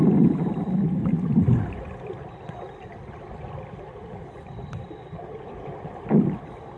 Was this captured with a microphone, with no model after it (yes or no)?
yes